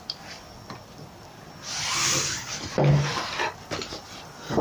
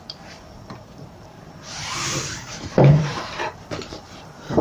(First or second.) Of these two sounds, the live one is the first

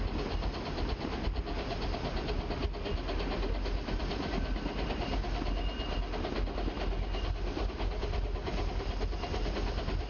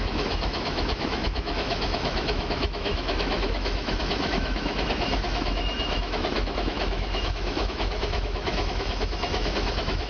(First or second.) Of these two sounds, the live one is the first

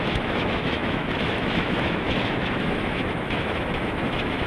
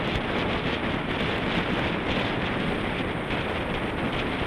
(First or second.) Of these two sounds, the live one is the second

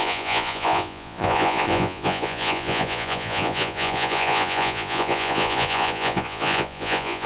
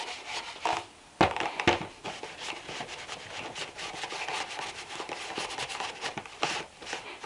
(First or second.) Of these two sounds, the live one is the second